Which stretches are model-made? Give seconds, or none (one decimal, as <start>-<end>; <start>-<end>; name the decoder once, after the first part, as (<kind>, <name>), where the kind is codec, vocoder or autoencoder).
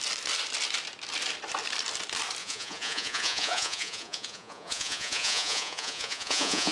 2.4-6.7 (vocoder, Vocos)